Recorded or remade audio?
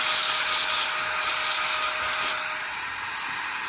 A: recorded